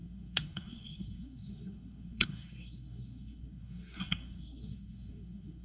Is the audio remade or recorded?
remade